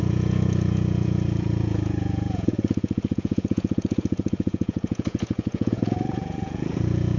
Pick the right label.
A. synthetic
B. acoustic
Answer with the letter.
A